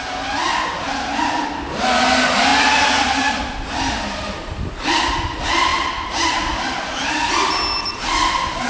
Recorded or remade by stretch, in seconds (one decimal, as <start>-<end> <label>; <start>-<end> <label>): 0.0-2.5 recorded; 2.5-3.3 remade; 3.3-5.7 recorded; 5.7-8.1 remade; 8.1-8.7 recorded